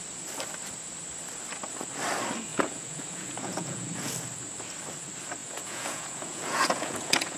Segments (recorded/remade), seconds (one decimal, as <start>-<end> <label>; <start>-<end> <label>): 0.0-2.5 recorded; 2.5-4.1 remade; 4.1-5.4 recorded; 5.4-7.4 remade